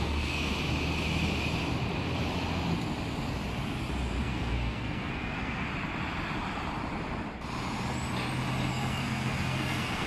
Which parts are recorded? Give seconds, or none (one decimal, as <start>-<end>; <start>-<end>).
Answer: 0.5-4.2; 5.7-8.7